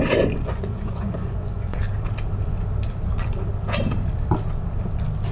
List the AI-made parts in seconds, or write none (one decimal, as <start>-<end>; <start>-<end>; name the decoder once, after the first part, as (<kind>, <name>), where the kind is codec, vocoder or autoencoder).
0.0-1.8 (vocoder, Vocos)